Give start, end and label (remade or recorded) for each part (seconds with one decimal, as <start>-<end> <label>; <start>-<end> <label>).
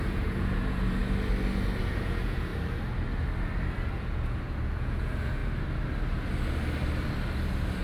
0.0-1.0 remade; 1.0-1.8 recorded; 1.8-2.5 remade; 2.5-3.9 recorded; 3.9-5.4 remade; 5.4-7.8 recorded